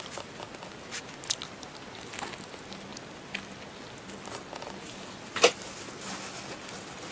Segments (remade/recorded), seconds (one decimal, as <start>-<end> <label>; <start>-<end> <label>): 0.0-7.1 recorded